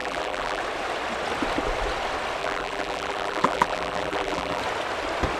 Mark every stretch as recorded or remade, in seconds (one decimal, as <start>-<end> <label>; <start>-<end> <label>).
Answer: 0.0-0.6 remade; 0.6-2.4 recorded; 2.4-4.6 remade; 4.6-5.4 recorded